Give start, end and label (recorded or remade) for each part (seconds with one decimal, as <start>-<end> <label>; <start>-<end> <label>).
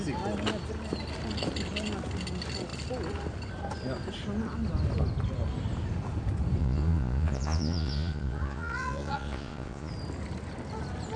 0.0-6.6 recorded; 6.6-9.9 remade; 9.9-11.2 recorded